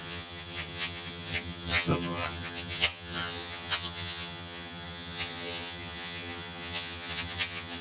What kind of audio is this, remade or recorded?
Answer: remade